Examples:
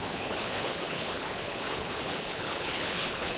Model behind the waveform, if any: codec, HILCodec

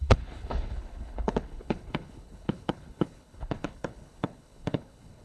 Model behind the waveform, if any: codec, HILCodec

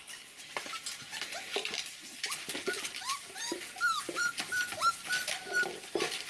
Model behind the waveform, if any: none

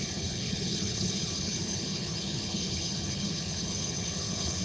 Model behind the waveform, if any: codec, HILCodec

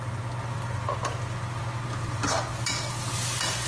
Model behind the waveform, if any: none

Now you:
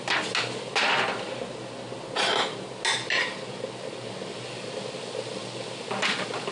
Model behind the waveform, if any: none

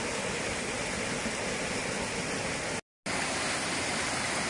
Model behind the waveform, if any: none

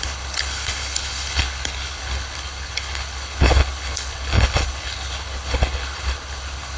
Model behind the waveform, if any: codec, HILCodec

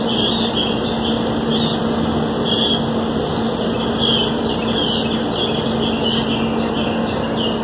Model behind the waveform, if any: none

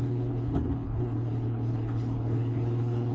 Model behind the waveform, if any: codec, HILCodec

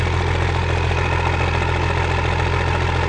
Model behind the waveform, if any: none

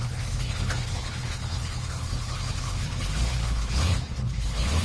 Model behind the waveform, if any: codec, HILCodec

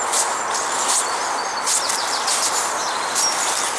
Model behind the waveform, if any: none